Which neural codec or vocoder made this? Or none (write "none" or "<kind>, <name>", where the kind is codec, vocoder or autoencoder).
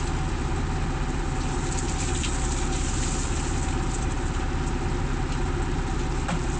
none